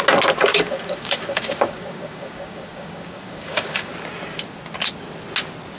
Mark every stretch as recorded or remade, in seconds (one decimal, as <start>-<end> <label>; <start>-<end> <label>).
0.0-0.4 recorded; 0.4-3.9 remade; 3.9-5.8 recorded

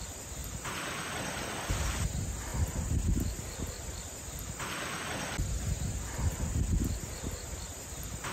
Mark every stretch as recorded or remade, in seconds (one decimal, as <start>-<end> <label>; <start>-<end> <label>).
0.0-8.3 recorded

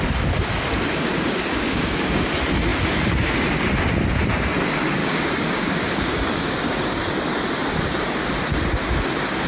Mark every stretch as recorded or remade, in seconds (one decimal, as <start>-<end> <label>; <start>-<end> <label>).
0.0-1.1 recorded; 1.1-2.3 remade; 2.3-5.0 recorded; 5.0-7.0 remade; 7.0-9.5 recorded

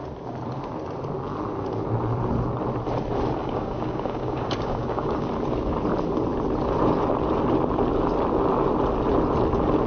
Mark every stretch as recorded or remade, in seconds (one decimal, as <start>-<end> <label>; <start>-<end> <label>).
0.0-3.4 recorded; 3.4-5.3 remade; 5.3-9.9 recorded

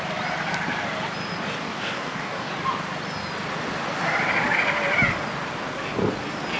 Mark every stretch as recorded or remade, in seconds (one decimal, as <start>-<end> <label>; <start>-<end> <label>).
0.0-1.6 recorded; 1.6-2.5 remade; 2.5-6.6 recorded

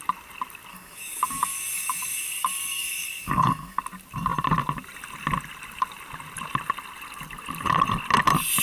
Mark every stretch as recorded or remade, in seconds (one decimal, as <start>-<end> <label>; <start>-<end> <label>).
0.0-0.7 recorded; 0.7-3.8 remade; 3.8-8.6 recorded